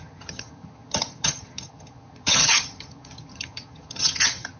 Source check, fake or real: fake